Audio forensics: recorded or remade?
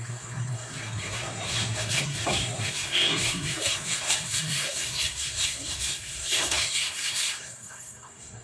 remade